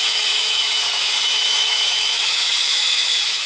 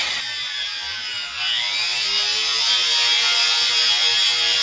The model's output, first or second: first